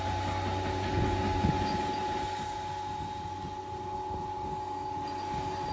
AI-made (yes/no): no